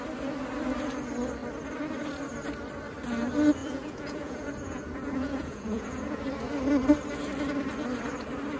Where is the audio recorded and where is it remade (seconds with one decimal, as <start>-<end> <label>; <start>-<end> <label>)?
0.0-3.6 recorded; 3.6-6.2 remade; 6.2-8.6 recorded